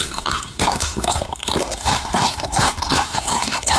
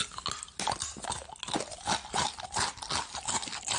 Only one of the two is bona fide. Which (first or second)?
second